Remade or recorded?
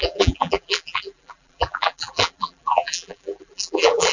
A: remade